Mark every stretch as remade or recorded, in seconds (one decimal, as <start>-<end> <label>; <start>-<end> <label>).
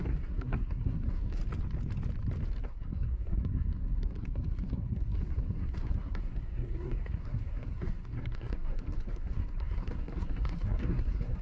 0.0-1.4 remade; 1.4-2.6 recorded; 2.6-11.4 remade